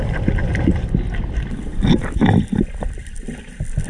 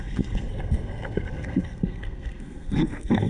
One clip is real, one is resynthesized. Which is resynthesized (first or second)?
second